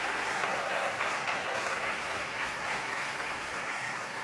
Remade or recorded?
remade